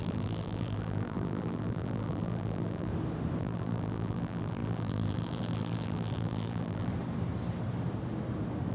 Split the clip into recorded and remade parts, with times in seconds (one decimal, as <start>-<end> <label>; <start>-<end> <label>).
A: 0.0-2.9 remade; 2.9-3.4 recorded; 3.4-6.9 remade; 6.9-8.7 recorded